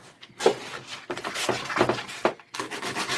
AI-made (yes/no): no